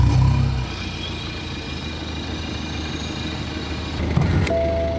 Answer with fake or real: real